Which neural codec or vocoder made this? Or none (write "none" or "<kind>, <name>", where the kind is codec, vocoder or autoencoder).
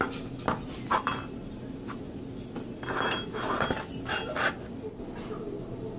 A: none